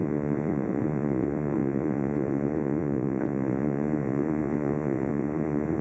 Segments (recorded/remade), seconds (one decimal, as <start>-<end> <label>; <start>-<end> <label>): 0.0-5.8 remade